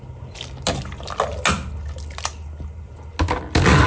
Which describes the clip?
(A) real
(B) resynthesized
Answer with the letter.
A